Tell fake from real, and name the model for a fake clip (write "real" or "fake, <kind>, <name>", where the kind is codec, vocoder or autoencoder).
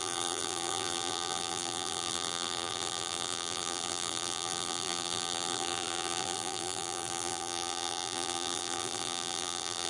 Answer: fake, vocoder, BigVGAN v2